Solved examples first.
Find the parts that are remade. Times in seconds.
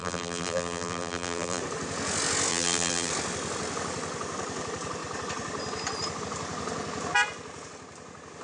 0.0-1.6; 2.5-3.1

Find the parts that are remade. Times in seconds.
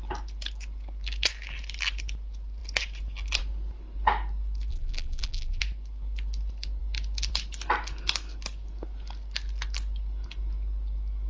4.7-5.6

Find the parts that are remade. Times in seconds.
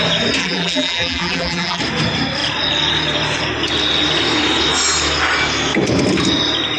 0.4-1.8